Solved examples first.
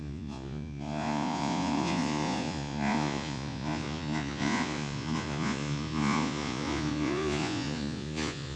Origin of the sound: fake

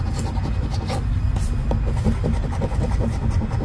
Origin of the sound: real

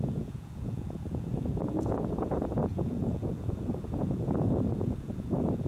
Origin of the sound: fake